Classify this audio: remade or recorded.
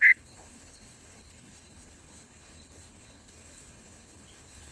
remade